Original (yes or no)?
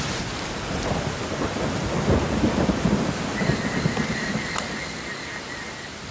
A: yes